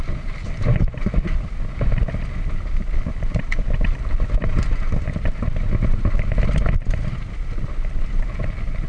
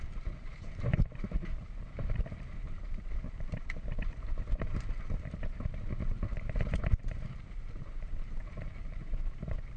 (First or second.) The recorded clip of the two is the first